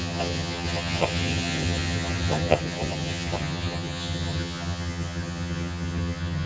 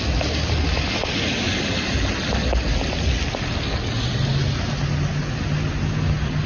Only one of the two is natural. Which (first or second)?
second